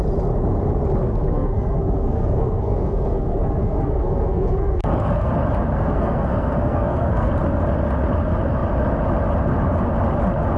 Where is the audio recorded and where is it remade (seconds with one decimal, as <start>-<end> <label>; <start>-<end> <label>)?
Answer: 0.0-1.0 recorded; 1.0-5.3 remade; 5.3-5.7 recorded; 5.7-7.3 remade; 7.3-10.6 recorded